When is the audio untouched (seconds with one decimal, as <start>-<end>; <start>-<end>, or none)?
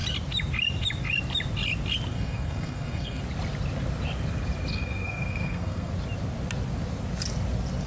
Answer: 0.0-2.1; 3.2-4.7; 5.9-7.9